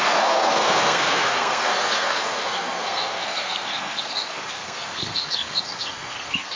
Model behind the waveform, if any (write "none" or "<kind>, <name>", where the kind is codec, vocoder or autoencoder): codec, SNAC